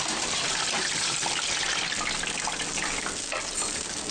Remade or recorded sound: recorded